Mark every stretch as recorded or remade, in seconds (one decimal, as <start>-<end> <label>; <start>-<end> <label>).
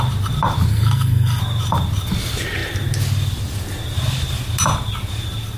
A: 0.0-0.7 recorded; 0.7-1.4 remade; 1.4-5.6 recorded